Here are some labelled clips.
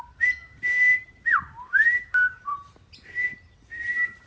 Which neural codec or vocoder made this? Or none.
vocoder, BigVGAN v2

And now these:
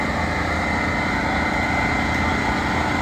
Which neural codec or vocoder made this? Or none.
none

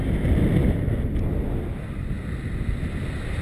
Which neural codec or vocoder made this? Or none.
none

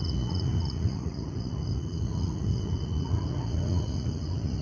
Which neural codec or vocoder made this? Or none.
vocoder, Vocos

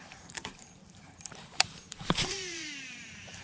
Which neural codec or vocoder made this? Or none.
vocoder, BigVGAN v2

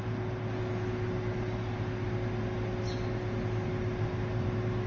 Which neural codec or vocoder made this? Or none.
none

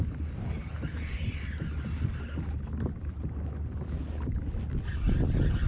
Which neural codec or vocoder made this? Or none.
none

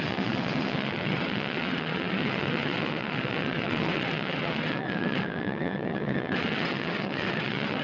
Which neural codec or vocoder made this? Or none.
vocoder, WaveNeXt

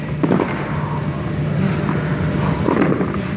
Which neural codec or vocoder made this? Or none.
none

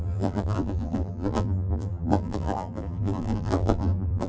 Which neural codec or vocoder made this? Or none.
vocoder, BigVGAN v2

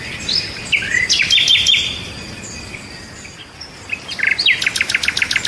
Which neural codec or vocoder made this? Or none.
none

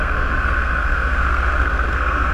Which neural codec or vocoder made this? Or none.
codec, SNAC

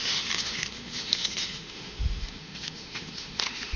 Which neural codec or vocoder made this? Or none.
autoencoder, DAC-VAE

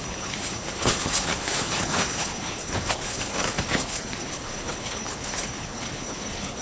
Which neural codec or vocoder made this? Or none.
codec, HILCodec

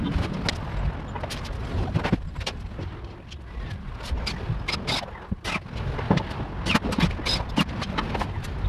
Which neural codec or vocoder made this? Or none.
none